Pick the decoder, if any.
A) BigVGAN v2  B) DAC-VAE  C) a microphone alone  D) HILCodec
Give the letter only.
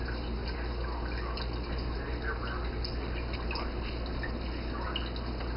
C